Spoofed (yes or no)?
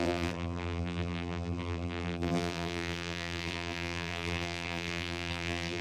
yes